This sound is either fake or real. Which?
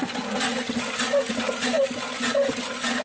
real